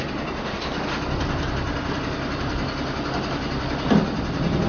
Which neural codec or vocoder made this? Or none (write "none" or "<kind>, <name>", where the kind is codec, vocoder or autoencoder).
none